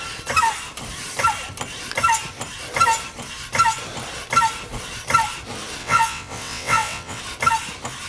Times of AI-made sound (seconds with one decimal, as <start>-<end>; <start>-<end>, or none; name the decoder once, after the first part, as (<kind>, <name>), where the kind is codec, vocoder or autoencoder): 5.8-7.2 (vocoder, WaveNeXt)